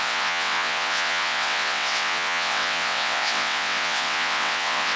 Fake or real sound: fake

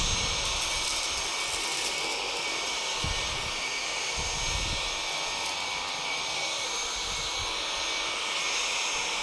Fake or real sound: real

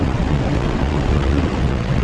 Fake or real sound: fake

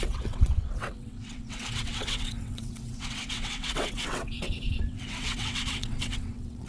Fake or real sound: fake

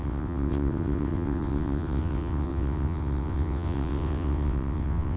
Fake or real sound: fake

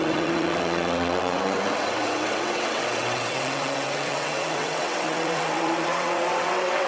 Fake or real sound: fake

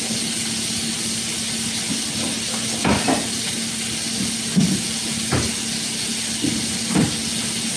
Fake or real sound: real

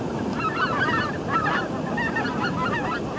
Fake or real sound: real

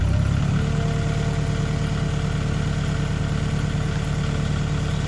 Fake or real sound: real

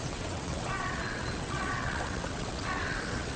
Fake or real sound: fake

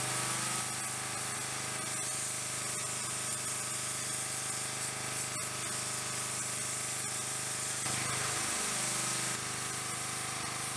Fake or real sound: real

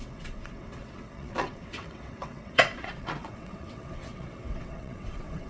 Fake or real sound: fake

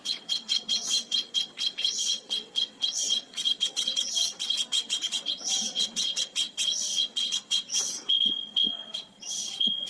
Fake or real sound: fake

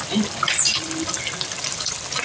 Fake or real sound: real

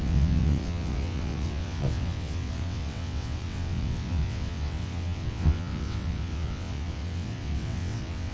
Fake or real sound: fake